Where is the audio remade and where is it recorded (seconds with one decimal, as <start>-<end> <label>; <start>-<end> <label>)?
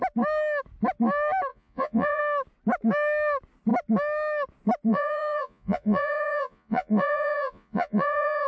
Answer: 0.0-1.5 recorded; 1.5-2.2 remade; 2.2-4.9 recorded; 4.9-8.5 remade